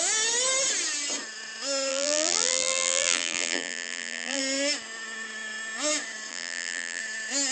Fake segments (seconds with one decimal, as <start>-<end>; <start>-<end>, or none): 1.9-4.4; 6.3-7.0